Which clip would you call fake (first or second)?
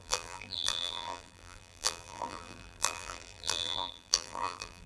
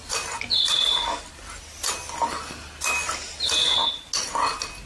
first